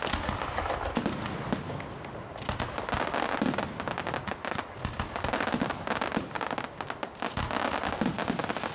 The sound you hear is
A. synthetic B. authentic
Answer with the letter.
B